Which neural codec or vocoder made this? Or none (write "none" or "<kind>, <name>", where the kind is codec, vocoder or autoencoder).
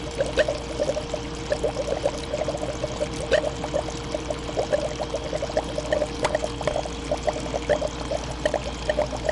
none